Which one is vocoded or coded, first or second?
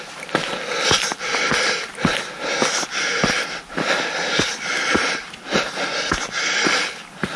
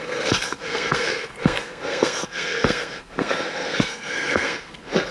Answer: second